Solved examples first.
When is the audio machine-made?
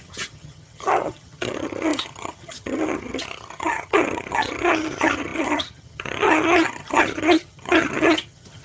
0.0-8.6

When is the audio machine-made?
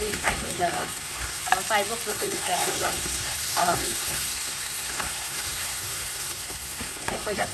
0.0-1.4; 2.1-7.5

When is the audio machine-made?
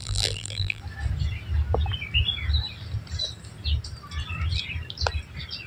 0.0-0.8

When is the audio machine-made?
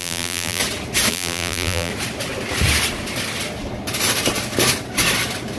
0.0-0.6; 1.1-1.9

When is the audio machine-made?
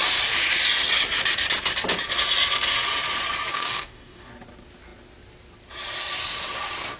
3.5-4.3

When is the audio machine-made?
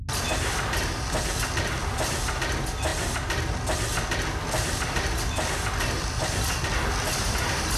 1.8-2.4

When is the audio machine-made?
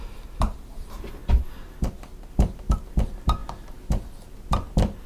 0.0-1.2; 2.3-3.4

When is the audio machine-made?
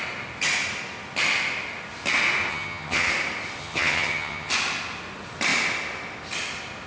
2.5-3.1; 3.6-4.5